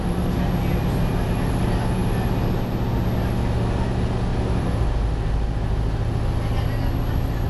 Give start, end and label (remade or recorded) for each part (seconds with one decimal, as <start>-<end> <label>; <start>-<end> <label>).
0.0-7.5 recorded